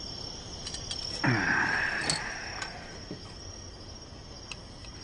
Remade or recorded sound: recorded